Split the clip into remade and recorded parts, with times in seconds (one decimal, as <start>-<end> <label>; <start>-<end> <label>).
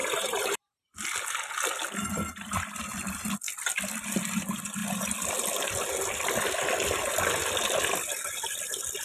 0.0-0.7 remade; 0.7-9.0 recorded